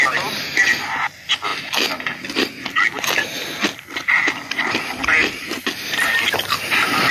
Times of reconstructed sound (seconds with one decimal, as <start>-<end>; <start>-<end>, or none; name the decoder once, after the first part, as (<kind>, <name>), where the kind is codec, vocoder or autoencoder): none